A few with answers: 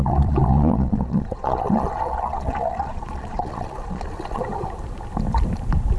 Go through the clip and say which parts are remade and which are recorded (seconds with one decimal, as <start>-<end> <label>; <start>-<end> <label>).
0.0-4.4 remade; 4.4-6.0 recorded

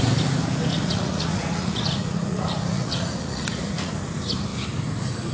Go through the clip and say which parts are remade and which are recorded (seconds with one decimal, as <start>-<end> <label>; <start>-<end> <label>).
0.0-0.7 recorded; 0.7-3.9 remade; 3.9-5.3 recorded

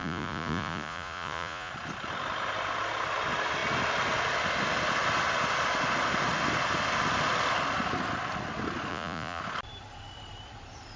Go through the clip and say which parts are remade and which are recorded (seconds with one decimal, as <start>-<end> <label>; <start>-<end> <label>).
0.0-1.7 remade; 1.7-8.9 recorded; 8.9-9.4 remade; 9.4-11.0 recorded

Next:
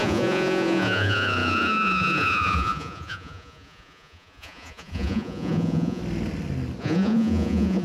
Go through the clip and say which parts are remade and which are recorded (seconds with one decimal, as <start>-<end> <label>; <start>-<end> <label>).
0.0-6.0 remade; 6.0-6.8 recorded; 6.8-7.8 remade